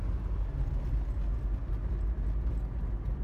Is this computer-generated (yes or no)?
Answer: no